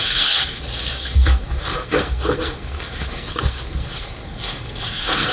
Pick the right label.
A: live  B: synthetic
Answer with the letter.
B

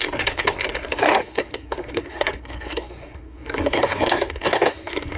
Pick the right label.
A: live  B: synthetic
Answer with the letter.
B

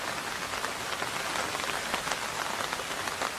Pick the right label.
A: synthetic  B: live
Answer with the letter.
B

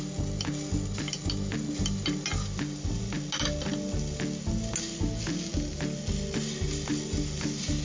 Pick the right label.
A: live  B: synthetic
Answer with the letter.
A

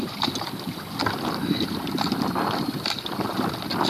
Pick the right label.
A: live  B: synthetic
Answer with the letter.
A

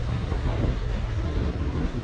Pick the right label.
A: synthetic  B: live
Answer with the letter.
A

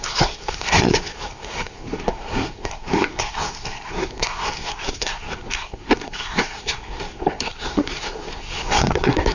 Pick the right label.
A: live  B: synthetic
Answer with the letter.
B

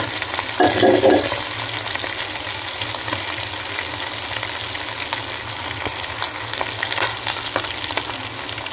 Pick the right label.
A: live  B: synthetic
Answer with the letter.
A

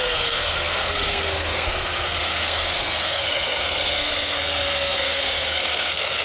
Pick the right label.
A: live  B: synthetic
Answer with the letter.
B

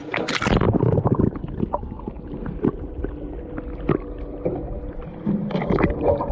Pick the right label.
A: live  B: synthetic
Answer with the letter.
A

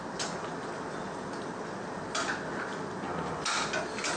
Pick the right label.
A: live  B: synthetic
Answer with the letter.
A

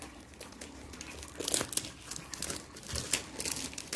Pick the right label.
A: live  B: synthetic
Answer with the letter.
A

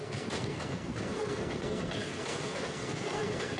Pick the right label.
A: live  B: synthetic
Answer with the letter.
B